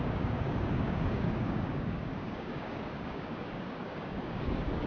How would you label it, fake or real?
fake